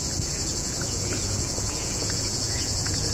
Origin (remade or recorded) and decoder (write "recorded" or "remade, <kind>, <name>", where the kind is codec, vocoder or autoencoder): remade, vocoder, Vocos